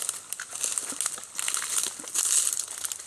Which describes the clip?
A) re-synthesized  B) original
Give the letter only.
B